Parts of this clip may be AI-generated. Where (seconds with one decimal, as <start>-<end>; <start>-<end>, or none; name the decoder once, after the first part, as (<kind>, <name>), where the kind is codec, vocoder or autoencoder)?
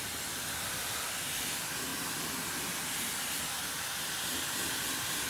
none